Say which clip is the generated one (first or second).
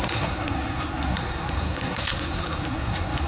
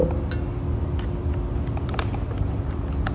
first